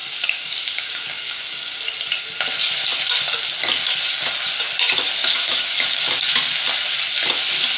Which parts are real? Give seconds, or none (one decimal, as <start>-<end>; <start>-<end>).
1.8-5.2; 6.1-7.8